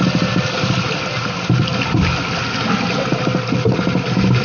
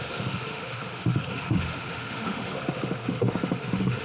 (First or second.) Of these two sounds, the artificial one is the second